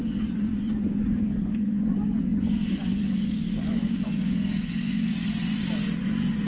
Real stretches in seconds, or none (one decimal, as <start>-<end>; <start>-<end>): none